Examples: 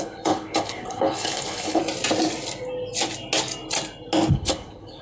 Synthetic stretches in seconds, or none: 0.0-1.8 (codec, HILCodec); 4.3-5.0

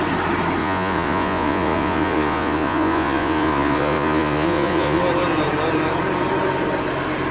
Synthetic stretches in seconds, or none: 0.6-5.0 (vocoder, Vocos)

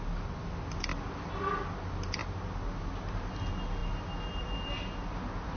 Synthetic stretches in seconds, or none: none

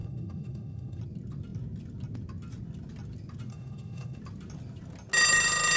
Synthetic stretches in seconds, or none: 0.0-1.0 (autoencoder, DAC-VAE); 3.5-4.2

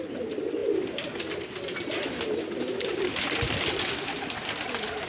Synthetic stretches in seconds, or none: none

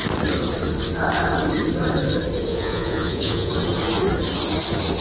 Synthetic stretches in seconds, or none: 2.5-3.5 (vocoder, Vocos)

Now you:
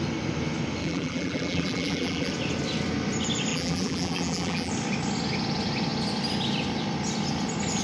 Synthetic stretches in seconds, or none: 0.8-2.3 (vocoder, BigVGAN v2); 3.5-4.7

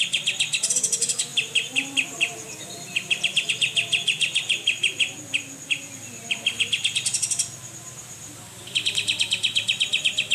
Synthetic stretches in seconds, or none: 1.3-3.5 (vocoder, BigVGAN v2); 7.6-8.6